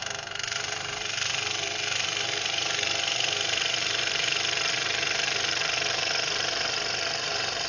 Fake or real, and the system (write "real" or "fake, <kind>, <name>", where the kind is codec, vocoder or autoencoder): fake, vocoder, BigVGAN v2